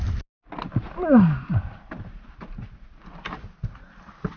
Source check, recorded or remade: recorded